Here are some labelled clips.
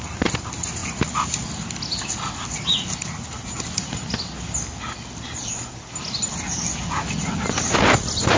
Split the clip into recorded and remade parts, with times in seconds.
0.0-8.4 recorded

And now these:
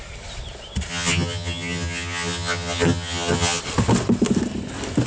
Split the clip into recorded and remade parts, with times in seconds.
0.0-0.9 recorded; 0.9-3.6 remade; 3.6-5.1 recorded

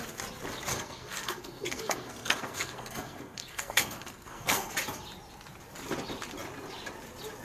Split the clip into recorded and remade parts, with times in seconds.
0.0-0.7 recorded; 0.7-4.7 remade; 4.7-7.4 recorded